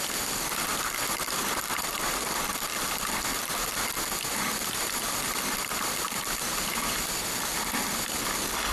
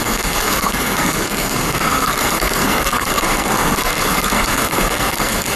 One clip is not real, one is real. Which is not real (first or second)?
second